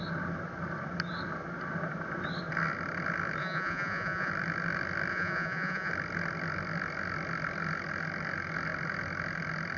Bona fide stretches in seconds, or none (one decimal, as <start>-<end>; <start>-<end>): 0.0-3.4; 4.3-5.1; 5.9-9.8